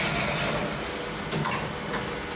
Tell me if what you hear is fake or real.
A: real